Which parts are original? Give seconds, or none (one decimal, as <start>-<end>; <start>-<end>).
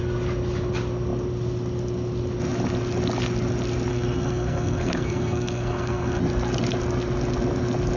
0.0-3.9; 6.2-8.0